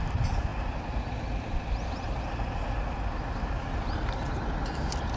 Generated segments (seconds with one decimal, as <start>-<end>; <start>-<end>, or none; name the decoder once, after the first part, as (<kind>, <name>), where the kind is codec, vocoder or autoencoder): none